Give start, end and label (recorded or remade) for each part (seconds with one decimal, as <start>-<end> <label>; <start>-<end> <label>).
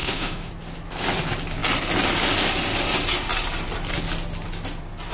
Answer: 0.0-0.5 remade; 0.5-5.1 recorded